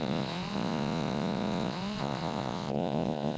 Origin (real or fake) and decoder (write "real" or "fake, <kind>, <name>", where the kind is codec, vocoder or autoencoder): fake, vocoder, Vocos